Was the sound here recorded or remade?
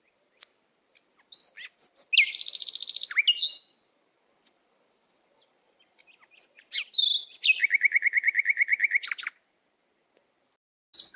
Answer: recorded